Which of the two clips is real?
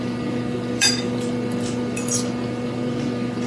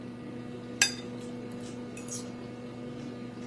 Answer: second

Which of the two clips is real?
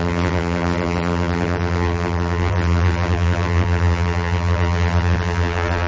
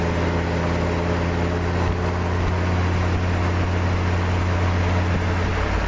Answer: second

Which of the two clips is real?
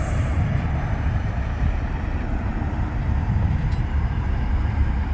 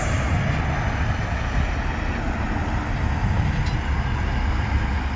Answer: second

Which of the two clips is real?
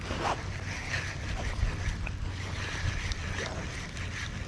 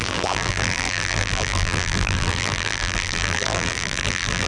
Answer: first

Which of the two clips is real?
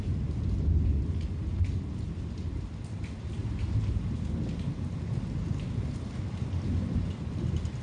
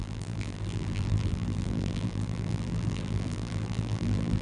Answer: first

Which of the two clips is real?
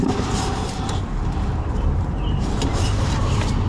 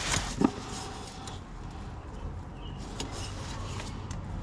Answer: second